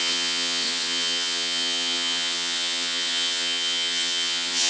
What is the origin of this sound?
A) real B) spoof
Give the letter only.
B